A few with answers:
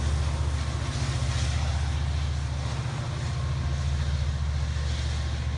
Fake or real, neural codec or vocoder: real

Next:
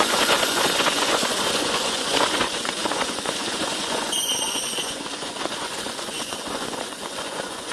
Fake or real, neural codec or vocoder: fake, vocoder, Vocos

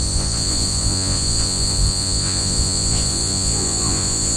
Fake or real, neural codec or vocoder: fake, vocoder, Vocos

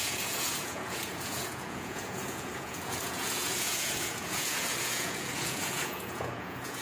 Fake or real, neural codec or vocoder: fake, vocoder, Vocos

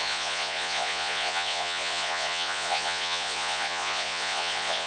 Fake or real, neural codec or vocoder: fake, vocoder, Vocos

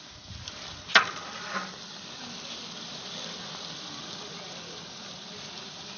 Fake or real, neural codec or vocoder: real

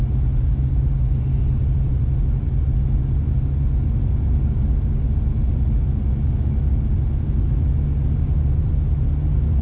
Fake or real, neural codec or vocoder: real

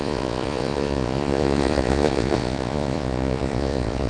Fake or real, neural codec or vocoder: fake, vocoder, Vocos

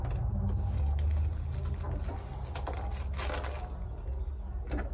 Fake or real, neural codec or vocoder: real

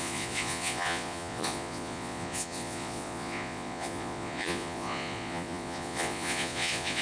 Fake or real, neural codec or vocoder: fake, vocoder, Vocos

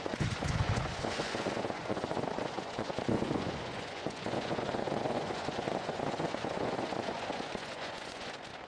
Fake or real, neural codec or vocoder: fake, vocoder, Vocos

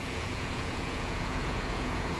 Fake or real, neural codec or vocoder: fake, vocoder, Vocos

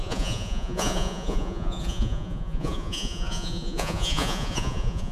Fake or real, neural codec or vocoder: fake, vocoder, Vocos